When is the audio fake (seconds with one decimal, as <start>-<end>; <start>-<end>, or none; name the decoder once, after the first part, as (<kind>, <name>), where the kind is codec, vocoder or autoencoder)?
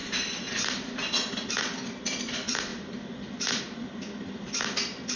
none